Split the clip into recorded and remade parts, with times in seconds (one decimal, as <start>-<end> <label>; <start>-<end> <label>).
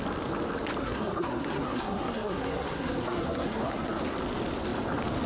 0.0-0.8 recorded; 0.8-4.0 remade; 4.0-5.3 recorded